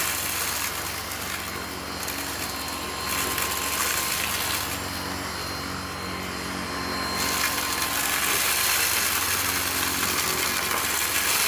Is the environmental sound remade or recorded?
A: recorded